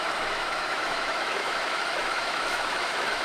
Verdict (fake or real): fake